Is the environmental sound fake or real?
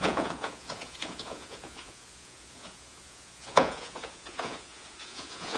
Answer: fake